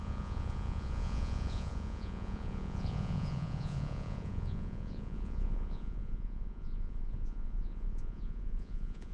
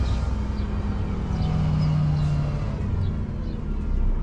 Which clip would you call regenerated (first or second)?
first